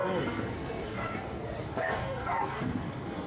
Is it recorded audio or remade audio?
remade